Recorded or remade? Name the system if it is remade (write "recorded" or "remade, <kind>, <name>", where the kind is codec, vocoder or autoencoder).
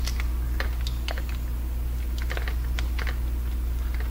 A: recorded